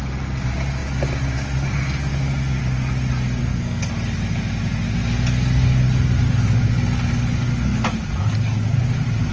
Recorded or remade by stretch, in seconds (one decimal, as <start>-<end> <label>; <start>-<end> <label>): 0.0-3.4 recorded; 3.4-3.9 remade; 3.9-9.3 recorded

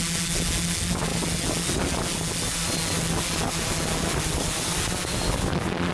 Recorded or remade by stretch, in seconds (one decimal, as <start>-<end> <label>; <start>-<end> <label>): 0.0-5.9 recorded

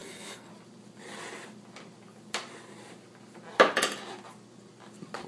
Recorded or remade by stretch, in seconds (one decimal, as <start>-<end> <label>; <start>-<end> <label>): 0.0-0.5 remade; 0.5-5.3 recorded